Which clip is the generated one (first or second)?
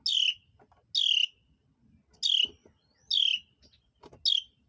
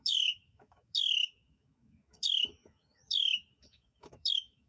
second